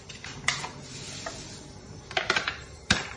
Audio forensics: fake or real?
fake